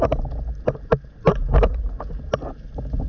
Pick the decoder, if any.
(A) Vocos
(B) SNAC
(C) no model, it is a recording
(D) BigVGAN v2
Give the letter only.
C